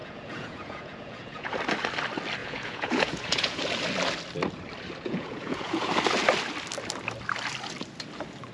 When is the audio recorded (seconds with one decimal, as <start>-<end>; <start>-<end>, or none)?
1.5-2.4; 3.6-5.1; 5.9-8.5